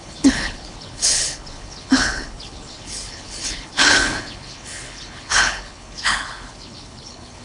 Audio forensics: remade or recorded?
remade